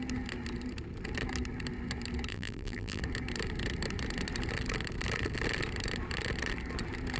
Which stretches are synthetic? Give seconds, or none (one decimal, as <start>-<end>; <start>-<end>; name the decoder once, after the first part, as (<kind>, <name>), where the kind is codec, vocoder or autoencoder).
2.3-3.0 (vocoder, BigVGAN v2)